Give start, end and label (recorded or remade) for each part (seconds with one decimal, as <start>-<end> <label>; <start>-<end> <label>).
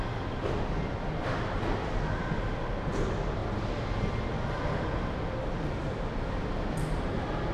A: 0.0-7.5 recorded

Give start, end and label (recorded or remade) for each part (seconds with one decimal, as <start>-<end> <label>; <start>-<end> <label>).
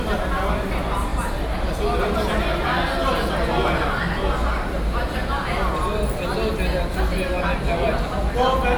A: 0.0-8.8 recorded